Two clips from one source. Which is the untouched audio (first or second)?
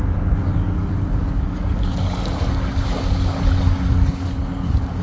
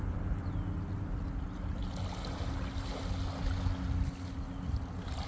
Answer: second